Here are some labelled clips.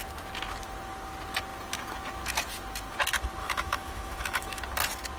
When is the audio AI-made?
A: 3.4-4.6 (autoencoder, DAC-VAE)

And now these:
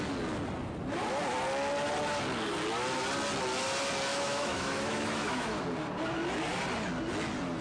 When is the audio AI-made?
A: 4.1-5.6 (autoencoder, DAC-VAE)

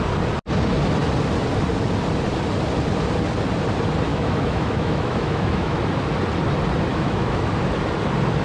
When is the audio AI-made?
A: 4.1-5.8 (autoencoder, DAC-VAE); 6.9-7.5

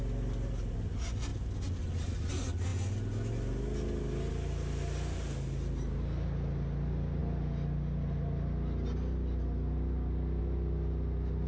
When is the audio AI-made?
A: none

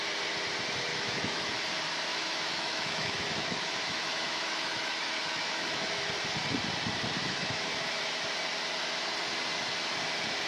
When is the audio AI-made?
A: 0.9-1.5 (autoencoder, DAC-VAE); 2.1-6.0; 7.2-8.0

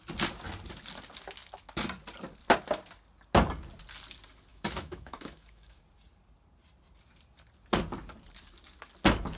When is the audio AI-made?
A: 4.5-5.8 (autoencoder, DAC-VAE)

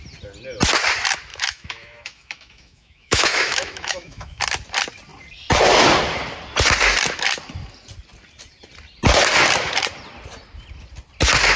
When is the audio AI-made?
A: 1.3-4.4 (autoencoder, DAC-VAE)

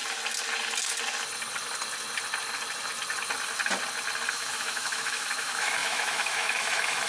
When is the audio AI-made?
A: 4.3-7.1 (autoencoder, DAC-VAE)